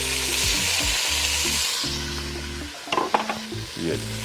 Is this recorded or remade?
recorded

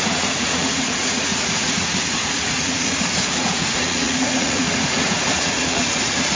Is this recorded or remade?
remade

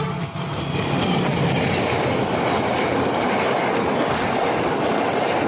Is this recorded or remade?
recorded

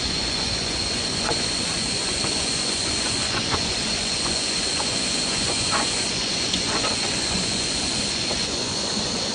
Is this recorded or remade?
remade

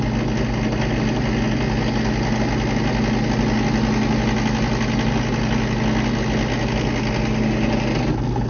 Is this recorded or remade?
recorded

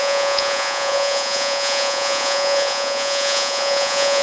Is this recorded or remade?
remade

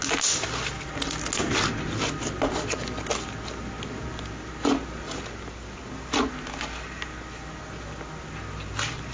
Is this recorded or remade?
recorded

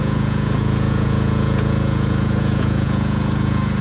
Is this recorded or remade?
remade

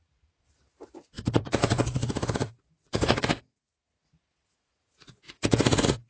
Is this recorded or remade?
remade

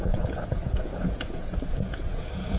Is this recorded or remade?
remade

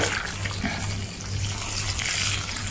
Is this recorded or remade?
recorded